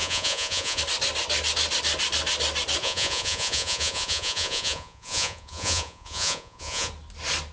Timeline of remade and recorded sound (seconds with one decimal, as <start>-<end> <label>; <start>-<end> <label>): 0.0-0.8 remade; 0.8-2.8 recorded; 2.8-6.9 remade; 6.9-7.5 recorded